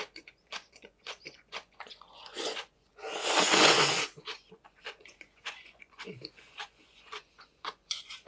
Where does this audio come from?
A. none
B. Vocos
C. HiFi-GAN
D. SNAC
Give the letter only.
B